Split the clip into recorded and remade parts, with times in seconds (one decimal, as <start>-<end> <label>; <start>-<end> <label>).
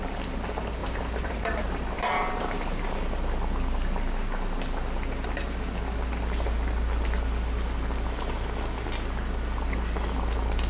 0.0-0.8 recorded; 0.8-3.0 remade; 3.0-10.7 recorded